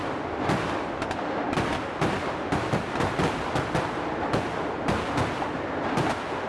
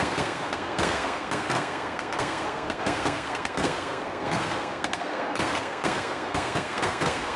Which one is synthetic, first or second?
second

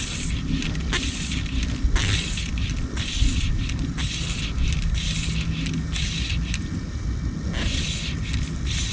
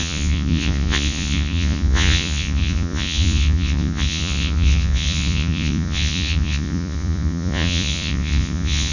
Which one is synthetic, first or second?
second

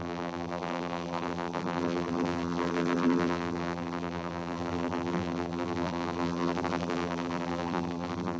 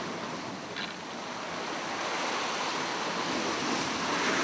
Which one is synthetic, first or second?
first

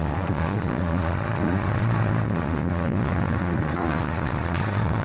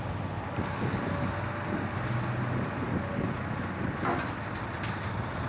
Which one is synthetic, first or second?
first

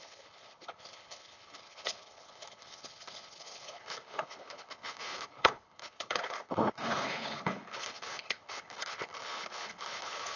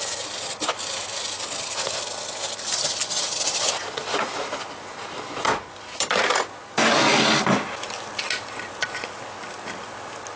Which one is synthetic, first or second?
first